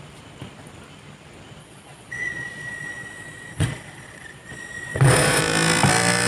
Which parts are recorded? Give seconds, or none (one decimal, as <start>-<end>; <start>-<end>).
0.0-1.6; 5.4-6.3